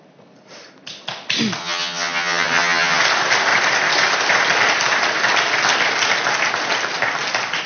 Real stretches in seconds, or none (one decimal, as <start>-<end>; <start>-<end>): 0.0-1.6; 3.0-7.7